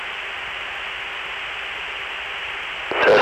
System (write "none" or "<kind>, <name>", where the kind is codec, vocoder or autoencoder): none